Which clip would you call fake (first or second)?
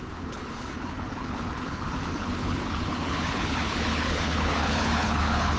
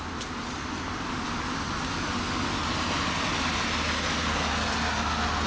first